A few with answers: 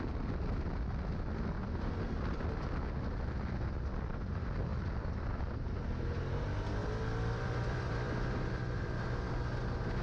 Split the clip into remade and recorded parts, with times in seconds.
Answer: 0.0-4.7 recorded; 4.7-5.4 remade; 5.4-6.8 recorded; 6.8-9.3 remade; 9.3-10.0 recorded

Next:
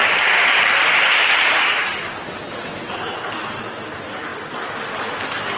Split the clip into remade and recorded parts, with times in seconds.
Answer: 0.0-2.9 remade; 2.9-4.3 recorded; 4.3-5.6 remade